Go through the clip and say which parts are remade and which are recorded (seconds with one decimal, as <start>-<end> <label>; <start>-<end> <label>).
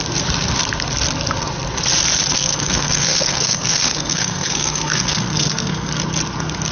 0.0-2.3 recorded; 2.3-5.9 remade; 5.9-6.7 recorded